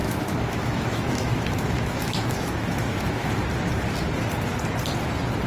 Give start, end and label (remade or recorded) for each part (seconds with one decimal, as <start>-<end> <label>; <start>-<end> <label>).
0.0-3.3 remade; 3.3-5.5 recorded